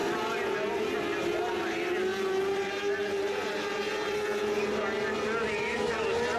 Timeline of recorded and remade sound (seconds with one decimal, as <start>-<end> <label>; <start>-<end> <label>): 0.0-6.4 recorded